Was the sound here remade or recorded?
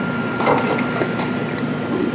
recorded